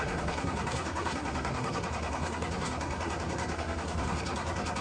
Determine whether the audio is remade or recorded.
remade